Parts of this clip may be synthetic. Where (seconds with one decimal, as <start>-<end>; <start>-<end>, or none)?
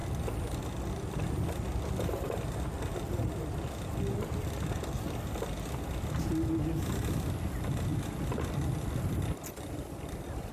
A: none